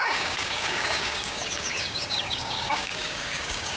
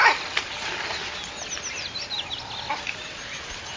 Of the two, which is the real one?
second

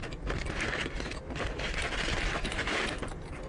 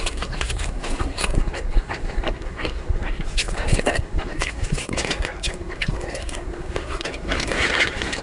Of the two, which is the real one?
first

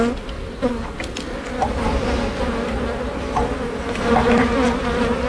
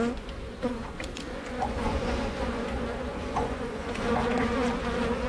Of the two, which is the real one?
first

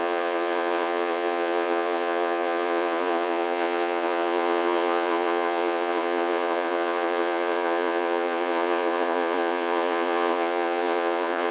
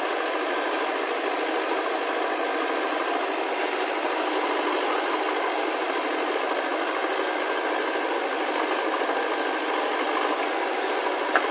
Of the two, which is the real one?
second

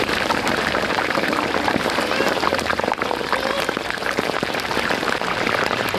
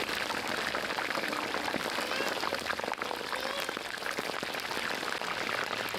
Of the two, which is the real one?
second